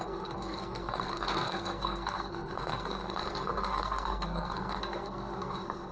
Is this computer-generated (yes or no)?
yes